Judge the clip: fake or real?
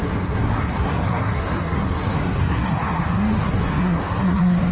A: fake